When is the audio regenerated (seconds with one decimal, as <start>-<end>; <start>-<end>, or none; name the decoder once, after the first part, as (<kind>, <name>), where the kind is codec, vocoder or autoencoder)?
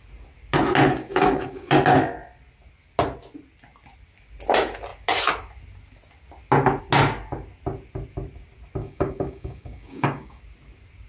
0.9-1.7 (codec, DAC); 8.8-10.4